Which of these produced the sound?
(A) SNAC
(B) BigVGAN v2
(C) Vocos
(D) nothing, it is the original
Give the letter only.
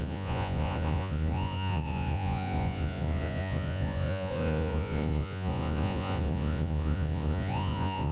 C